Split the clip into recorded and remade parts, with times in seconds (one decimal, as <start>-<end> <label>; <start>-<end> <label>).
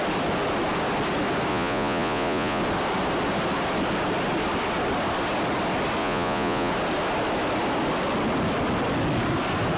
0.0-1.5 recorded; 1.5-2.6 remade; 2.6-6.0 recorded; 6.0-6.7 remade; 6.7-9.8 recorded